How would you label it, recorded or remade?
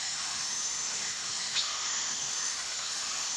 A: remade